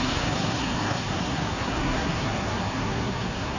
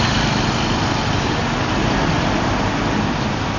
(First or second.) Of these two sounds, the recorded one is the second